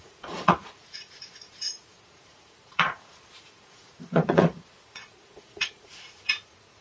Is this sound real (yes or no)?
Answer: no